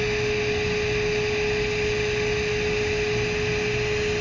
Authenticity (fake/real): real